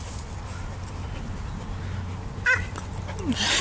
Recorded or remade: recorded